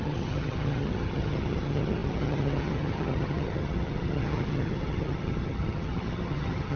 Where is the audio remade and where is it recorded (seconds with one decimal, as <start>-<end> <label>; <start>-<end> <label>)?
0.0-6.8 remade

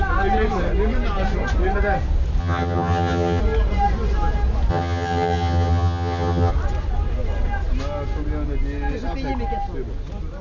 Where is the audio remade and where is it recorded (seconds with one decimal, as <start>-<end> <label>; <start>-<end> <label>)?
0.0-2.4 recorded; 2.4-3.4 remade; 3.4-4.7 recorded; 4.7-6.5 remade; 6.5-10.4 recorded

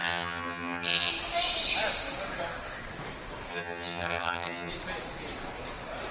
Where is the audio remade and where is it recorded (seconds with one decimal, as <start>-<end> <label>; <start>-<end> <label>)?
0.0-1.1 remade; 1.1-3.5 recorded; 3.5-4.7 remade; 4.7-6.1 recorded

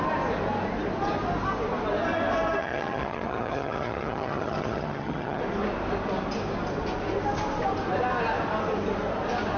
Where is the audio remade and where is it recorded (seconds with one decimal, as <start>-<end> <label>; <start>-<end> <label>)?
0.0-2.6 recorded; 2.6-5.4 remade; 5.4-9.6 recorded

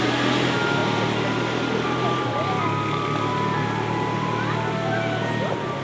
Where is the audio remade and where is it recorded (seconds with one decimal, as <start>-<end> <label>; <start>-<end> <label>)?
0.0-5.8 recorded

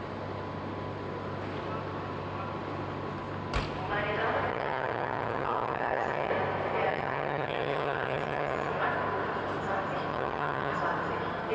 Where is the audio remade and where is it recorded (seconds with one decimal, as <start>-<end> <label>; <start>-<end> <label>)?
0.0-4.5 recorded; 4.5-6.3 remade; 6.3-6.9 recorded; 6.9-8.7 remade; 8.7-10.1 recorded; 10.1-10.7 remade; 10.7-11.5 recorded

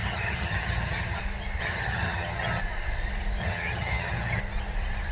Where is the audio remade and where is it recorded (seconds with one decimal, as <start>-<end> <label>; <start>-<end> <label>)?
0.0-1.2 remade; 1.2-1.6 recorded; 1.6-2.6 remade; 2.6-3.4 recorded; 3.4-4.4 remade; 4.4-5.1 recorded